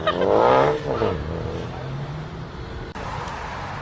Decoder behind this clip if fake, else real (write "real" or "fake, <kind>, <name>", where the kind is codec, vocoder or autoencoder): real